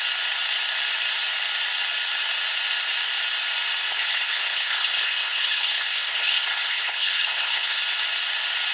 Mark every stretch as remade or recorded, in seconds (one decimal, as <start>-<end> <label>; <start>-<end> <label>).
0.0-3.9 recorded; 3.9-7.8 remade; 7.8-8.7 recorded